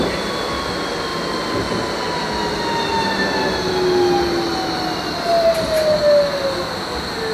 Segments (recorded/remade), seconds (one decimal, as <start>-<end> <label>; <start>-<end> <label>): 0.0-7.3 recorded